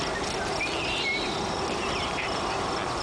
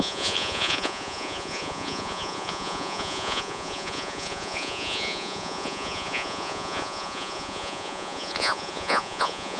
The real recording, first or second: first